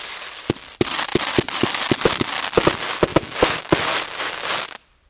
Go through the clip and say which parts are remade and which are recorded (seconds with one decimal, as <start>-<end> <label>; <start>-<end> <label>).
0.0-5.1 recorded